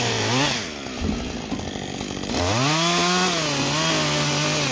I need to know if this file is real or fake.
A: real